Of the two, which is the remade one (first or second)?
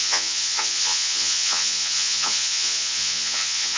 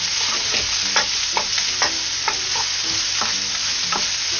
first